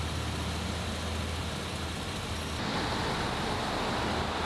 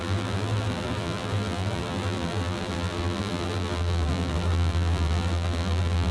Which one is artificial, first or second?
second